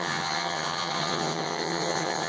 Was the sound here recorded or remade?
remade